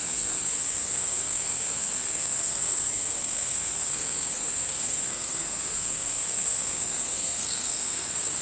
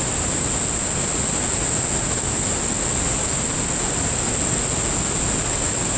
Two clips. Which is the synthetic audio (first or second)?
first